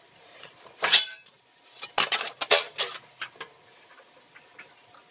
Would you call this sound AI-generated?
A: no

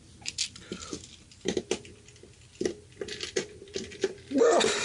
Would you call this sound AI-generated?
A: yes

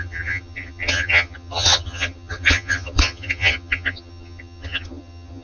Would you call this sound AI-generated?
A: yes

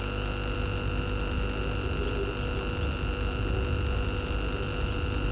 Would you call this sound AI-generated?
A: no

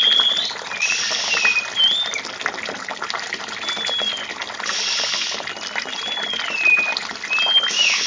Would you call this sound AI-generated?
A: no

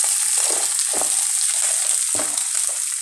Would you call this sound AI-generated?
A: no